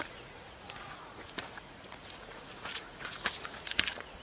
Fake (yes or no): yes